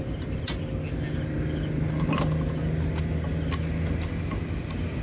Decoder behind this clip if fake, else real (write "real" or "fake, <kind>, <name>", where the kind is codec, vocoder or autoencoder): real